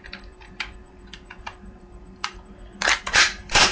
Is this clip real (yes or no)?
no